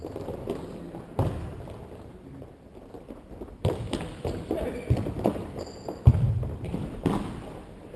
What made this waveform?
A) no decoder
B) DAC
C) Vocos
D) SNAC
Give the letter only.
A